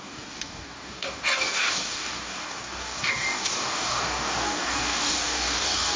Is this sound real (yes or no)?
no